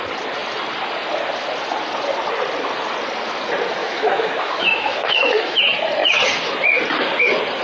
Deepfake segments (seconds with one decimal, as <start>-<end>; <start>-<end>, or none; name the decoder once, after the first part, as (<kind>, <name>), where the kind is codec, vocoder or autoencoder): 3.8-5.6 (autoencoder, DAC-VAE)